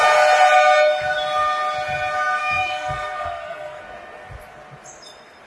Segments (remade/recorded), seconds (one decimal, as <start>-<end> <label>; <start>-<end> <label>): 0.0-2.4 recorded; 2.4-3.8 remade; 3.8-5.5 recorded